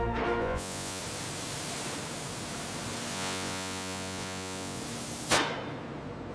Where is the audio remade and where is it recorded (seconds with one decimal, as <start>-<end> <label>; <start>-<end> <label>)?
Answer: 0.0-0.4 recorded; 0.4-1.0 remade; 1.0-3.1 recorded; 3.1-4.8 remade; 4.8-6.3 recorded